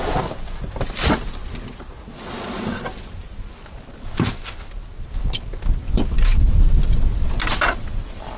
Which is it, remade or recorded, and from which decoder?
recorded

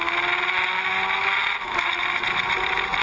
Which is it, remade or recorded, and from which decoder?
recorded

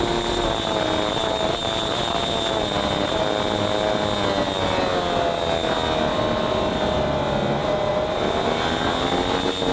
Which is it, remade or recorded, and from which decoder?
recorded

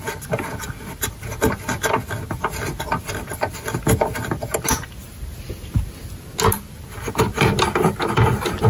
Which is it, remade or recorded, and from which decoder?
recorded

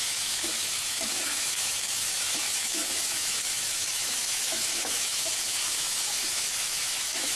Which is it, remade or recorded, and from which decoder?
remade, autoencoder, DAC-VAE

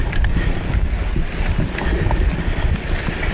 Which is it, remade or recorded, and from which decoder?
recorded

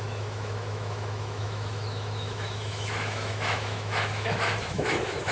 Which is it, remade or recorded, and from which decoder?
remade, autoencoder, DAC-VAE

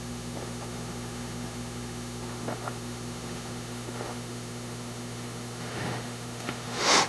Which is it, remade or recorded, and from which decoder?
remade, autoencoder, DAC-VAE